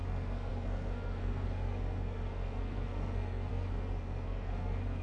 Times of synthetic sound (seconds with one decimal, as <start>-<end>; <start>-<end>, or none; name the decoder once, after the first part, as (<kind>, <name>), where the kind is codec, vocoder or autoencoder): 0.0-5.0 (codec, SNAC)